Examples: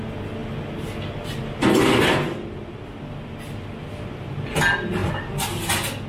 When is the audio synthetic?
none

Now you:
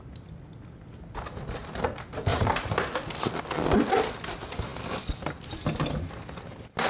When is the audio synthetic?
2.3-2.9 (vocoder, BigVGAN v2)

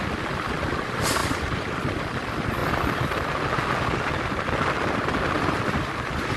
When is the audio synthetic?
0.0-2.6 (vocoder, BigVGAN v2); 5.3-6.4

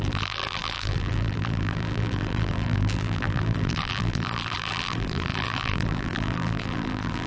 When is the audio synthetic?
0.0-7.3 (vocoder, BigVGAN v2)

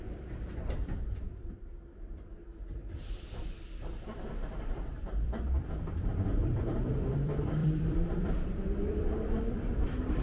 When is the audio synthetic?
0.0-10.2 (vocoder, BigVGAN v2)

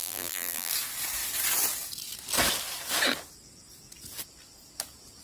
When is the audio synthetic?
0.0-0.7 (vocoder, BigVGAN v2)